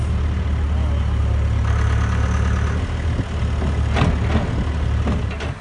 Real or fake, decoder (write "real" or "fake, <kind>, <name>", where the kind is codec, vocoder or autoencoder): real